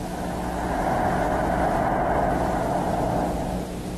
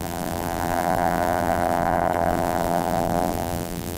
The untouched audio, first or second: first